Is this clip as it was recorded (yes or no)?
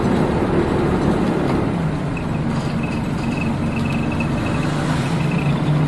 yes